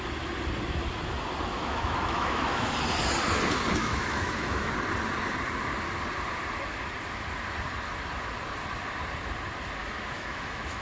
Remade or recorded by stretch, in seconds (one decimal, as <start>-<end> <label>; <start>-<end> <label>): 0.0-1.5 recorded; 1.5-2.7 remade; 2.7-3.8 recorded; 3.8-4.7 remade; 4.7-9.8 recorded; 9.8-10.8 remade